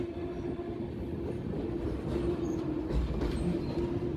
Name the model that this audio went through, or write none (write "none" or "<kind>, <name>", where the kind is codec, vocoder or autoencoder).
none